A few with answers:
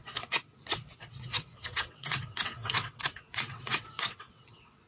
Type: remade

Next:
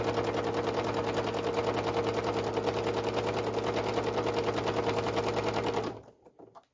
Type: recorded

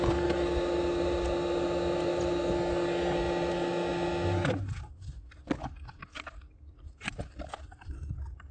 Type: recorded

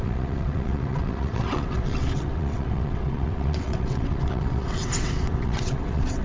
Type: remade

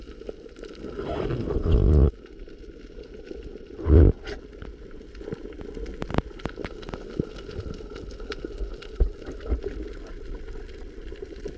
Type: recorded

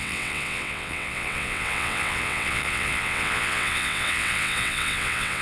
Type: remade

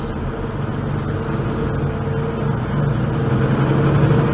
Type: recorded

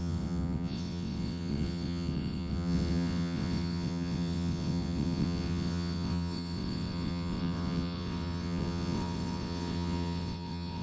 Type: remade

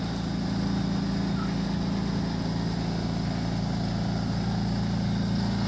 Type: recorded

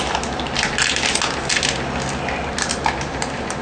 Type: recorded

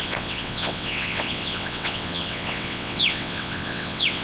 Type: remade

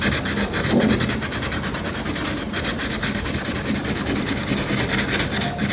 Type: recorded